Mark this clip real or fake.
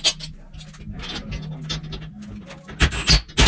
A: real